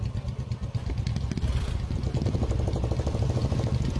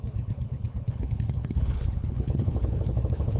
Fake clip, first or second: second